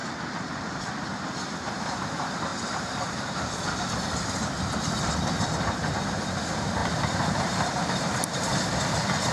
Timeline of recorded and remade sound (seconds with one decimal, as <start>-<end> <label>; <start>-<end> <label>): 0.0-0.8 remade; 0.8-2.5 recorded; 2.5-3.6 remade; 3.6-6.8 recorded; 6.8-8.8 remade; 8.8-9.3 recorded